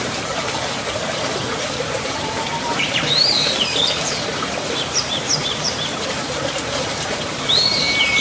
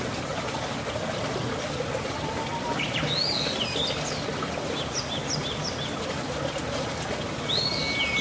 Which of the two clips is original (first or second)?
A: second